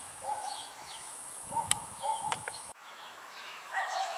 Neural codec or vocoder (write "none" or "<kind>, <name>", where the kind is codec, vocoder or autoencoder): autoencoder, DAC-VAE